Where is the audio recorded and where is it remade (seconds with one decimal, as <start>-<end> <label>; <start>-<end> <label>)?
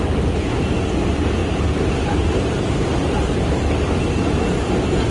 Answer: 0.0-1.4 recorded; 1.4-3.5 remade; 3.5-5.1 recorded